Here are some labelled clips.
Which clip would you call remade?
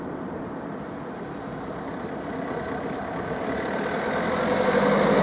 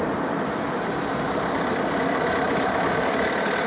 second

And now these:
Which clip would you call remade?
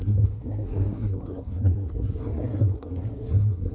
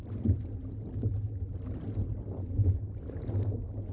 first